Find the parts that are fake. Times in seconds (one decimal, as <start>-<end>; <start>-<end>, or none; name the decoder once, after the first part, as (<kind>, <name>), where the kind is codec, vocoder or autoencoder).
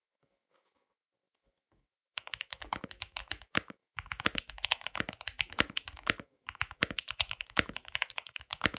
0.0-8.8 (autoencoder, DAC-VAE)